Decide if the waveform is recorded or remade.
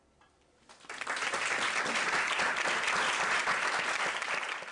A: recorded